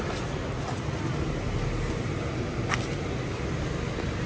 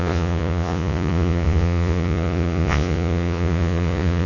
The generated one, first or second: second